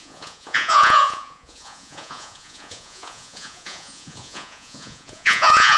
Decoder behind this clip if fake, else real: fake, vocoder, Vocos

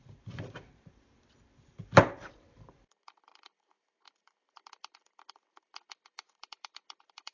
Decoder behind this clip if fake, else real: fake, vocoder, BigVGAN v2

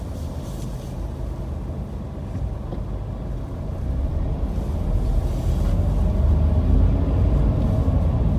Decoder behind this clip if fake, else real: real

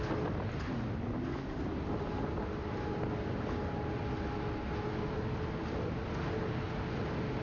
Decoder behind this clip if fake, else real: real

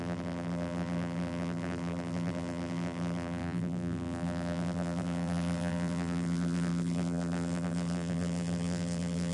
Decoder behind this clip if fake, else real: fake, vocoder, BigVGAN v2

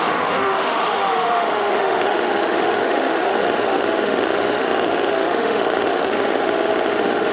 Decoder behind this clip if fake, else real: fake, autoencoder, DAC-VAE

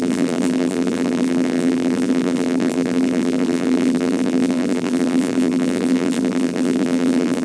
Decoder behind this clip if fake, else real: fake, vocoder, BigVGAN v2